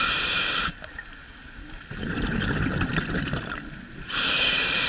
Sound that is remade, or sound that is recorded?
recorded